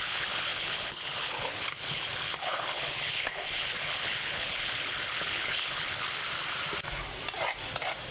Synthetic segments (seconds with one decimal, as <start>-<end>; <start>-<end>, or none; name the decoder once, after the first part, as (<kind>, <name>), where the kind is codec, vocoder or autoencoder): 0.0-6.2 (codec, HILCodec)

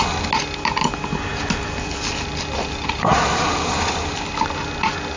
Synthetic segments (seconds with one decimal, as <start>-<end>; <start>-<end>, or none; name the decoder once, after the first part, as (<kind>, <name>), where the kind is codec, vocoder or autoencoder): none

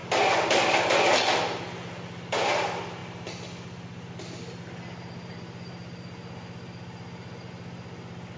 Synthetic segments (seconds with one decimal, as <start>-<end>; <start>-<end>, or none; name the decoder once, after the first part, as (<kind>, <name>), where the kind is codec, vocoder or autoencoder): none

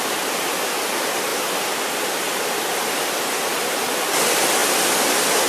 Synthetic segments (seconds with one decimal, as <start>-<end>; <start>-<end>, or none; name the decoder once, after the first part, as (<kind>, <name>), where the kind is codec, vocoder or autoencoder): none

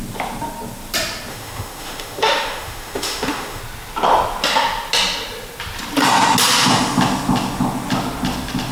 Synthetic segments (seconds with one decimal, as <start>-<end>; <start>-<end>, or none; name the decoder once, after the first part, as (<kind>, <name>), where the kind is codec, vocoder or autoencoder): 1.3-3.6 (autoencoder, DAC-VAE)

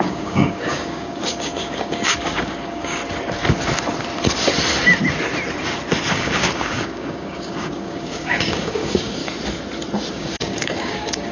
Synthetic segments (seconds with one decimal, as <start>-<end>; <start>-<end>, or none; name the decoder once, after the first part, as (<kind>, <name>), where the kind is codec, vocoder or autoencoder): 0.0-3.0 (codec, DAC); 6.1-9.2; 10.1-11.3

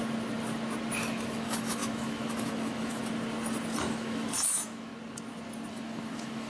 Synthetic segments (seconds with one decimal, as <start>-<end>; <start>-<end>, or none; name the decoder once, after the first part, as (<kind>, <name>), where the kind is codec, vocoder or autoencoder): 1.0-3.0 (autoencoder, DAC-VAE); 3.8-4.9; 5.7-6.5